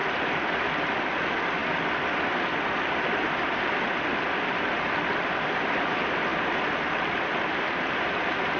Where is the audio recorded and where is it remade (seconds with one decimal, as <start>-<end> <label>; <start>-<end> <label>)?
0.0-1.1 remade; 1.1-6.3 recorded; 6.3-7.8 remade; 7.8-8.6 recorded